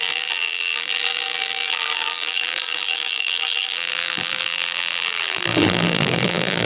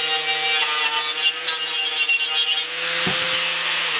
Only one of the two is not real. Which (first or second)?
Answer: first